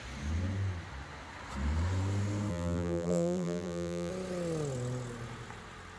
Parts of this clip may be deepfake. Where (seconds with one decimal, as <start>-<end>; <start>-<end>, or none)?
2.5-4.1